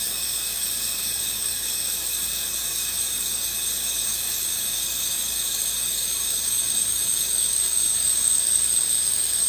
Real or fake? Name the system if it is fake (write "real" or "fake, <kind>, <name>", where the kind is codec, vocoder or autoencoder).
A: fake, codec, DAC